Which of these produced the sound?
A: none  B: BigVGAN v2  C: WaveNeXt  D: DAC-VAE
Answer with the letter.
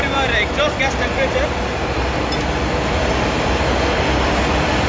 A